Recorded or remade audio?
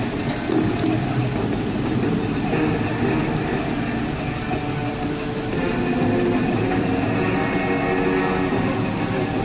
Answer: recorded